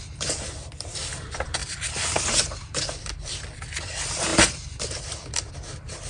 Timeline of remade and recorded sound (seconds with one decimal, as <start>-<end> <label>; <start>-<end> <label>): 0.0-6.1 remade